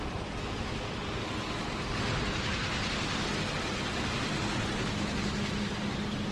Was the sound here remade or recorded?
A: recorded